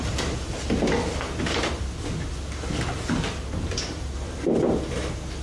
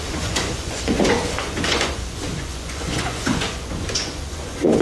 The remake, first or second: second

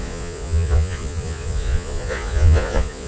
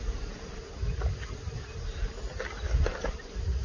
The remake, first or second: first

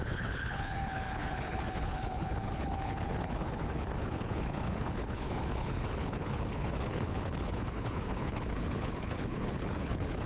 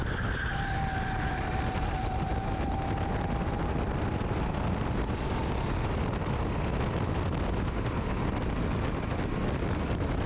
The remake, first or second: first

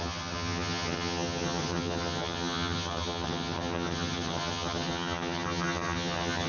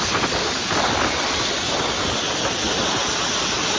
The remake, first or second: first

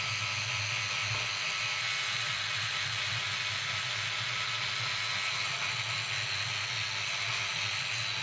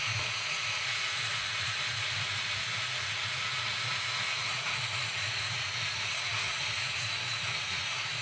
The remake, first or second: second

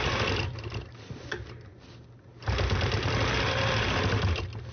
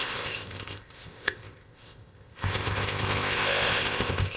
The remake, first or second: second